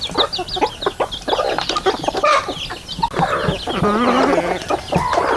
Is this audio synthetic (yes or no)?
no